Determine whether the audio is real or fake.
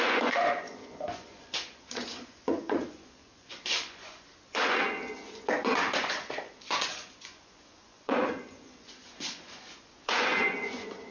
fake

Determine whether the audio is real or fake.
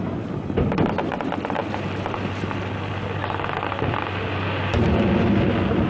real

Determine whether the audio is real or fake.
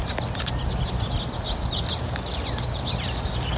real